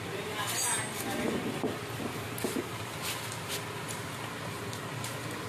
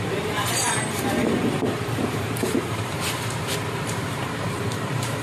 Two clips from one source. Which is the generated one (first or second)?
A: second